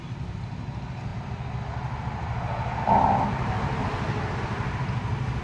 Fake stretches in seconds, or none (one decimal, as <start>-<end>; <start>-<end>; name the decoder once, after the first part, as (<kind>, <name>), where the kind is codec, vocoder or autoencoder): none